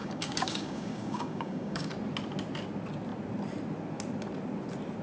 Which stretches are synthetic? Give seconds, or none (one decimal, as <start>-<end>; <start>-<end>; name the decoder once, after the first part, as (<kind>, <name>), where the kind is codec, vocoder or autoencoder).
0.0-1.9 (codec, DAC)